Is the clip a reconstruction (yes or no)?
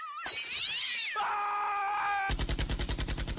no